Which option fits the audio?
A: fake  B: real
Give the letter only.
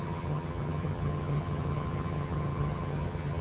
A